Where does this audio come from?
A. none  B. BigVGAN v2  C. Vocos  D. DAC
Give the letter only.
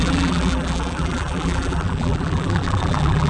B